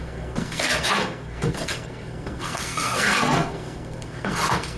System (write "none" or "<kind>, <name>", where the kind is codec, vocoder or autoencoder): codec, SNAC